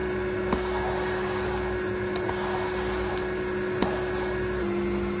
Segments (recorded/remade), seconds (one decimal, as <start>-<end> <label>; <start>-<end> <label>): 0.0-5.2 recorded